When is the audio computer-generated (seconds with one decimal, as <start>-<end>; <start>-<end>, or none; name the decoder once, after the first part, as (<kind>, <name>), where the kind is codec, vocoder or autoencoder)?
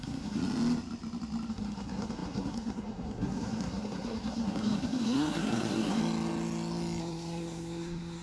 0.0-0.4 (codec, SNAC); 1.5-6.0; 7.0-8.2